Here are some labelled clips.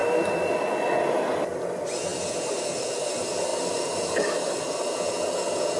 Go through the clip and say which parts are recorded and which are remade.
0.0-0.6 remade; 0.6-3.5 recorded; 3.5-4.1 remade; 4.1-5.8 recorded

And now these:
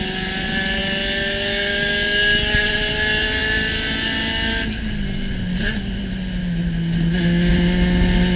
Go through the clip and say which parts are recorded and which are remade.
0.0-8.4 recorded

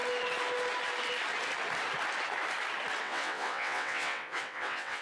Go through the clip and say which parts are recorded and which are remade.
0.0-3.0 recorded; 3.0-5.0 remade

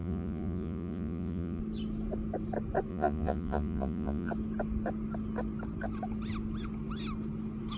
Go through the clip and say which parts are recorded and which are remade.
0.0-1.6 remade; 1.6-2.9 recorded; 2.9-4.3 remade; 4.3-7.8 recorded

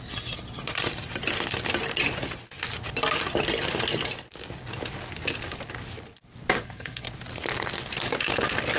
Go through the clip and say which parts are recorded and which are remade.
0.0-6.6 recorded; 6.6-7.1 remade; 7.1-8.8 recorded

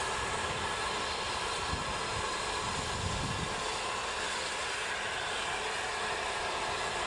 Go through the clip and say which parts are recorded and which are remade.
0.0-7.1 recorded